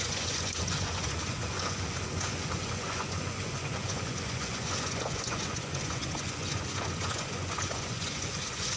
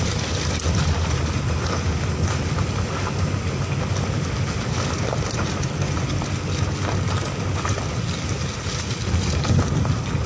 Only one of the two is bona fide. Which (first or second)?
second